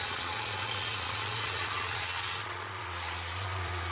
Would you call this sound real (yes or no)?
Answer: no